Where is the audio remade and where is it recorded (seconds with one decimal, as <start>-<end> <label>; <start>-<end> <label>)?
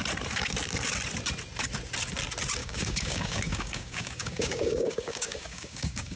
0.0-2.6 recorded; 2.6-6.2 remade